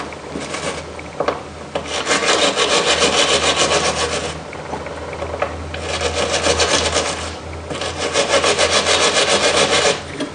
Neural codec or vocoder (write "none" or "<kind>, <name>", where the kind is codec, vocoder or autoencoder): none